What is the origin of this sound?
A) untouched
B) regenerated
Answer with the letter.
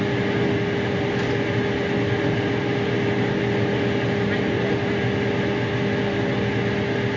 A